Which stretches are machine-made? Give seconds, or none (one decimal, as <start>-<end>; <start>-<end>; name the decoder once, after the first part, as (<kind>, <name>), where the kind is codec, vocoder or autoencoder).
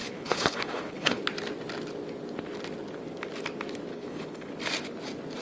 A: 0.0-1.2 (codec, HILCodec); 3.9-4.5